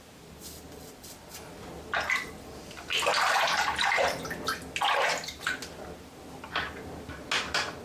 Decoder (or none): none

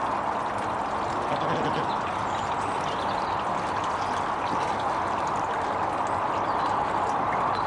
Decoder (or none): none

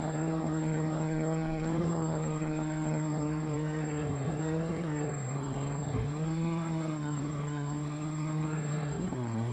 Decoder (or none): codec, SNAC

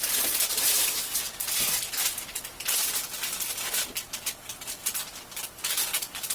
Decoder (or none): none